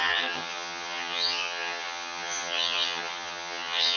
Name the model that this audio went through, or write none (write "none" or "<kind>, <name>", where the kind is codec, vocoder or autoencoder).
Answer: vocoder, HiFi-GAN